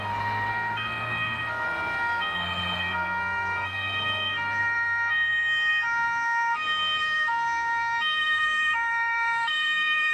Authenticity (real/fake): fake